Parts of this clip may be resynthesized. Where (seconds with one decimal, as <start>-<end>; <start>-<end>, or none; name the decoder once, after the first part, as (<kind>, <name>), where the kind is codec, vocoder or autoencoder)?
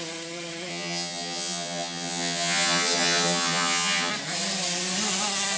0.7-4.1 (vocoder, HiFi-GAN)